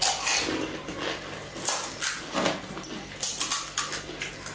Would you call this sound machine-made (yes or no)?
no